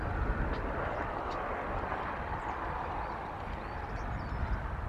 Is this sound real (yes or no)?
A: yes